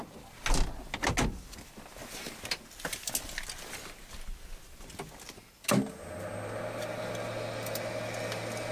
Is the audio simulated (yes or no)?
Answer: no